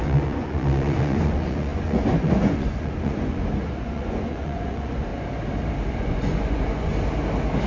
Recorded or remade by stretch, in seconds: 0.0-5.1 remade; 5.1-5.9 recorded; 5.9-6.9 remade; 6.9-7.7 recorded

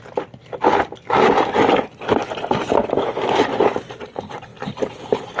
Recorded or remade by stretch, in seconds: 0.0-5.4 recorded

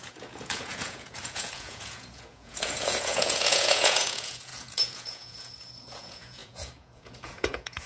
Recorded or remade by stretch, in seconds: 0.0-7.9 remade

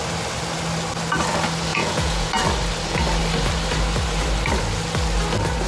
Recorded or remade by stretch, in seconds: 0.0-1.7 recorded; 1.7-2.3 remade; 2.3-5.7 recorded